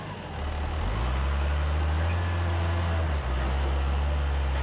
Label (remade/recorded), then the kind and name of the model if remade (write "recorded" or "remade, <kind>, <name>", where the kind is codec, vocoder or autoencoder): recorded